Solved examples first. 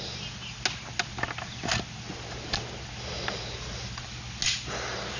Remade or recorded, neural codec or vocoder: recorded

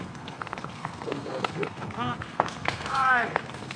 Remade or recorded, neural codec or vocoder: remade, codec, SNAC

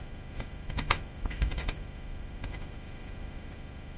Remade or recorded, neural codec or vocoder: remade, autoencoder, DAC-VAE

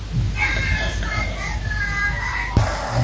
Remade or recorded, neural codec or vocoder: recorded